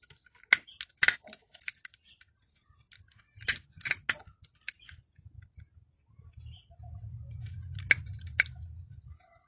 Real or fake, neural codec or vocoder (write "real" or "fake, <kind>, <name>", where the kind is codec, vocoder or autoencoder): real